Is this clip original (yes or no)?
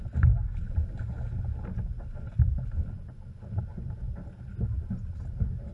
yes